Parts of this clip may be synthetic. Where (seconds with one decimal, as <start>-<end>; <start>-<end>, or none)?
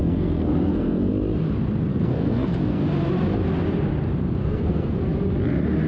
0.0-1.1; 1.9-2.9; 4.4-5.0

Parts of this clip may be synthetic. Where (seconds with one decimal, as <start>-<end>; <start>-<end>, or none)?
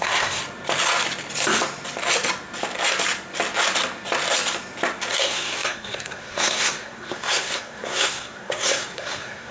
0.0-0.4; 5.1-9.5